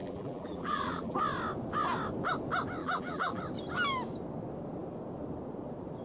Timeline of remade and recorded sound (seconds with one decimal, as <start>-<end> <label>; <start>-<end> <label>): 0.0-1.2 remade; 1.2-2.8 recorded; 2.8-3.4 remade; 3.4-6.0 recorded